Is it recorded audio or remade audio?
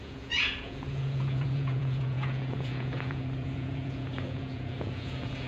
remade